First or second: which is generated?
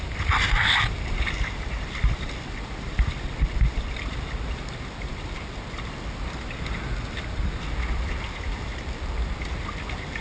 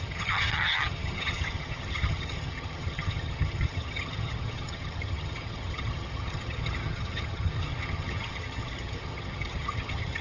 second